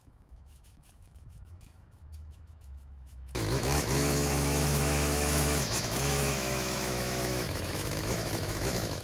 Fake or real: fake